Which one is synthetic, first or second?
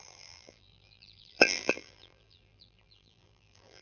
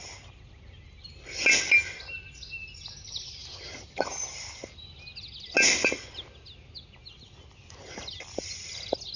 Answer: first